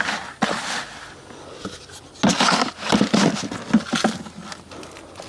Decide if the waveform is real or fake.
real